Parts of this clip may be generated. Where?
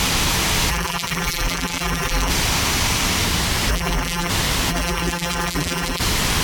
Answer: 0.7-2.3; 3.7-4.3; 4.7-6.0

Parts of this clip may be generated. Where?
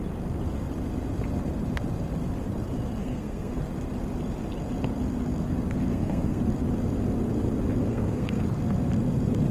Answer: 3.0-3.6; 5.9-6.4; 7.8-8.4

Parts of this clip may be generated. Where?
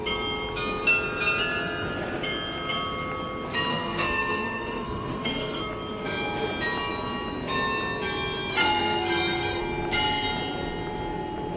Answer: 3.7-5.6; 8.5-9.6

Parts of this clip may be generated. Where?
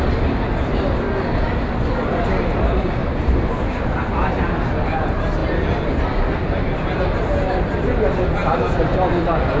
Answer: 3.0-3.8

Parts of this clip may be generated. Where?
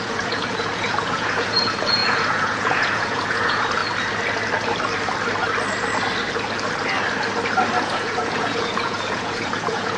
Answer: 0.0-3.8; 7.8-10.0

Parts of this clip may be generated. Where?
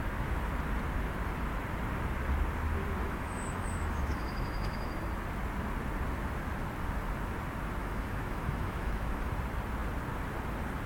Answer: 3.0-4.9; 7.8-9.3